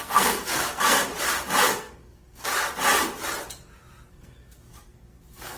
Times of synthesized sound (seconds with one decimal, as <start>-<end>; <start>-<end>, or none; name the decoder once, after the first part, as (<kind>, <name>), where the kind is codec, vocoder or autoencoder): 0.0-1.1 (codec, SNAC); 1.6-2.5; 4.1-5.6